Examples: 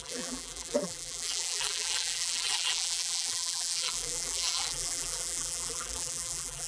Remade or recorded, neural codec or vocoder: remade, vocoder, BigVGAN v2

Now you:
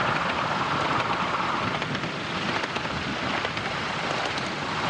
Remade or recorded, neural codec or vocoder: recorded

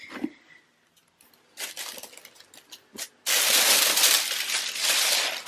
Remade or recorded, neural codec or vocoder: recorded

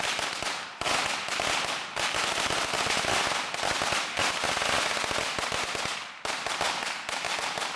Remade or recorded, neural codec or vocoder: recorded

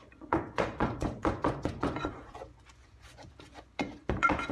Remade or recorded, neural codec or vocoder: remade, vocoder, Vocos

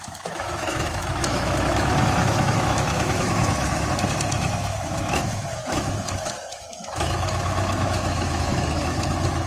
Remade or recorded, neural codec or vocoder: remade, autoencoder, DAC-VAE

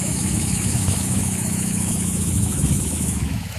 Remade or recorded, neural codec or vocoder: remade, autoencoder, DAC-VAE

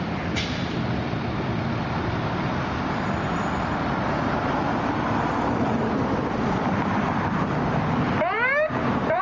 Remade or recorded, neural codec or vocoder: remade, vocoder, BigVGAN v2